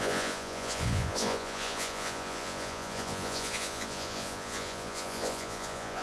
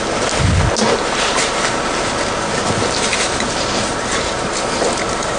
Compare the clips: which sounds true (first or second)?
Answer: second